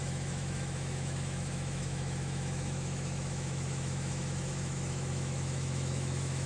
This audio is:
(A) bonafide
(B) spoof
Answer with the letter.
B